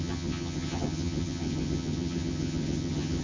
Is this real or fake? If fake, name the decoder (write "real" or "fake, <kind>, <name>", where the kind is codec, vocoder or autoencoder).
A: fake, vocoder, HiFi-GAN